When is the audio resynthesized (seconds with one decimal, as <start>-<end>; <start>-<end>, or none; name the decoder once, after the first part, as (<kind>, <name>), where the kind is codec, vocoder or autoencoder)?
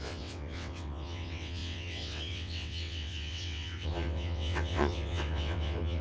0.0-6.0 (vocoder, WaveNeXt)